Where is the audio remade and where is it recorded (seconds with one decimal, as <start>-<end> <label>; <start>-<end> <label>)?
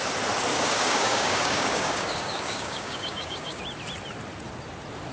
0.0-0.5 recorded; 0.5-3.6 remade; 3.6-5.1 recorded